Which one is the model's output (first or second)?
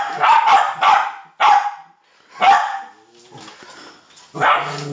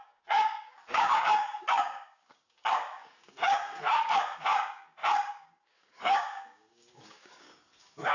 second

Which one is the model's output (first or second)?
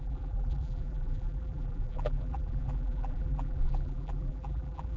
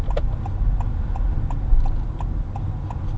first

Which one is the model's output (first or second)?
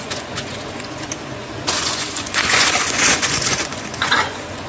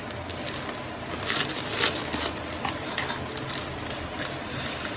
first